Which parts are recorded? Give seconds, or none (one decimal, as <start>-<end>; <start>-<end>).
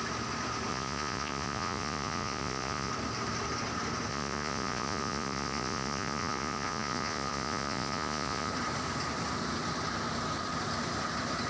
0.0-0.7; 2.9-4.1; 8.5-11.5